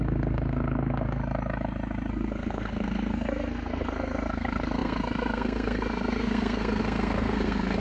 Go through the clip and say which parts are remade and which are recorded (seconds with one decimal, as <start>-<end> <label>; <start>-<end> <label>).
0.0-1.2 remade; 1.2-2.1 recorded; 2.1-7.8 remade